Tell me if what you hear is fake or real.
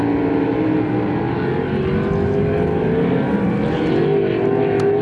real